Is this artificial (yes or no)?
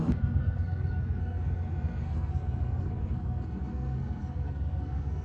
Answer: yes